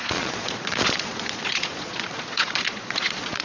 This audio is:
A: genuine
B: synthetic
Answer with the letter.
B